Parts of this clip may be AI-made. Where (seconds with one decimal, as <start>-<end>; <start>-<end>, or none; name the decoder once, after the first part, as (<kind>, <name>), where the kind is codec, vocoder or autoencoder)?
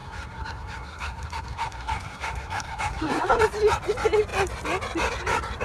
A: 0.0-3.4 (codec, SNAC)